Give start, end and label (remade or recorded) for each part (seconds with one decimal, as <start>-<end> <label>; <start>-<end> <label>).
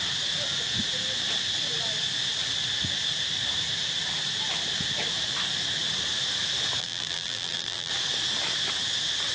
0.0-6.8 recorded; 6.8-7.9 remade; 7.9-9.3 recorded